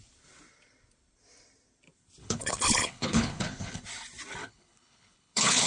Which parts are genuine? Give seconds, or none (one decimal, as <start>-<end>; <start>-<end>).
0.0-2.2; 3.8-4.4